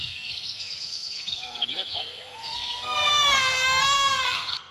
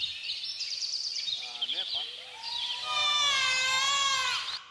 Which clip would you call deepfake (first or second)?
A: first